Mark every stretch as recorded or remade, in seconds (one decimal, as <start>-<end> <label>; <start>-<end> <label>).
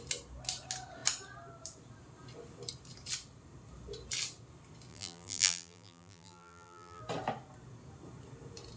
0.0-4.9 recorded; 4.9-7.0 remade; 7.0-8.8 recorded